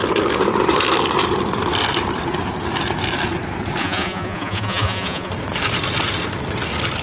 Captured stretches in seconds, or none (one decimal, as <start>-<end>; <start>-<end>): 0.0-3.8; 5.3-7.0